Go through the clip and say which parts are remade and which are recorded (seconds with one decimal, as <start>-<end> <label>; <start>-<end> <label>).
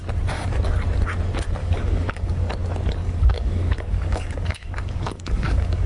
0.0-1.6 recorded; 1.6-2.5 remade; 2.5-3.0 recorded; 3.0-5.9 remade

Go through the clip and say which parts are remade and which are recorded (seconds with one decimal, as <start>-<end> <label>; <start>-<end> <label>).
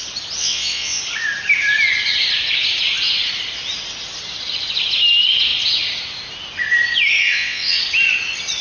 0.0-0.4 recorded; 0.4-1.0 remade; 1.0-7.2 recorded; 7.2-7.8 remade; 7.8-8.6 recorded